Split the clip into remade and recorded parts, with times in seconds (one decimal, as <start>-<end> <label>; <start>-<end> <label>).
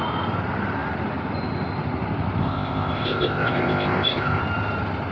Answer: 0.0-2.4 recorded; 2.4-4.4 remade; 4.4-5.1 recorded